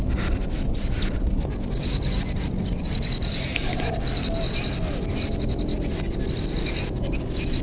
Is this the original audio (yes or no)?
yes